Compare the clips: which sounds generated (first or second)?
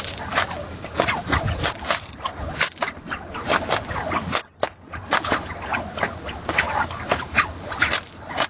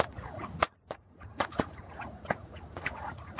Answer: second